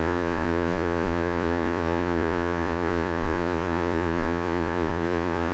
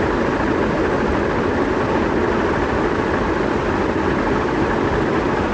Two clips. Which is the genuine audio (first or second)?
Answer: second